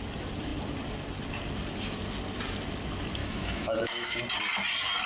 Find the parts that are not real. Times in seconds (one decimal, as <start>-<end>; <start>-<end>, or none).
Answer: 3.2-4.2